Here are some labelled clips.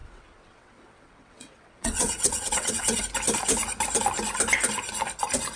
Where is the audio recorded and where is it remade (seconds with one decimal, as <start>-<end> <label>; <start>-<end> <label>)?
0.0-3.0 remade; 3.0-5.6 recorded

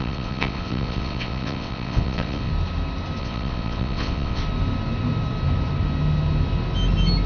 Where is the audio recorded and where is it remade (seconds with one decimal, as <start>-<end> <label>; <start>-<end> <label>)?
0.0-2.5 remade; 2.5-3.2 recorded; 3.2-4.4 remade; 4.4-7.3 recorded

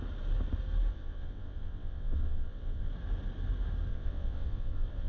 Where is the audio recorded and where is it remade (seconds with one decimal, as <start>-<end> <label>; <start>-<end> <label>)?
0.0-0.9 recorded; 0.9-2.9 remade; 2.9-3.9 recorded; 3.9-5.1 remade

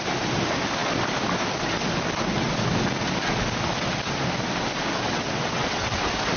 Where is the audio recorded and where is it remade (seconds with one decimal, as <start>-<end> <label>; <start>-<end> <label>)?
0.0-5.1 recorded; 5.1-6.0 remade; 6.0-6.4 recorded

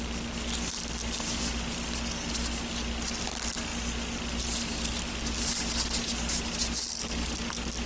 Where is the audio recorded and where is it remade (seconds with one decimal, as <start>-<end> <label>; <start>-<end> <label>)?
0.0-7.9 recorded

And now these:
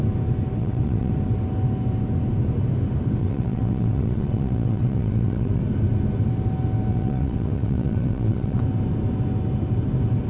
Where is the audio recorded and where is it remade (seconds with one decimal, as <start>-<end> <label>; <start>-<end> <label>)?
0.0-0.6 recorded; 0.6-1.1 remade; 1.1-3.2 recorded; 3.2-5.6 remade; 5.6-6.9 recorded; 6.9-8.6 remade; 8.6-10.3 recorded